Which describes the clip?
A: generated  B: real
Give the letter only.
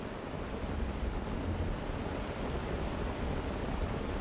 B